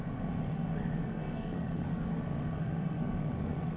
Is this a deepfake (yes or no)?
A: yes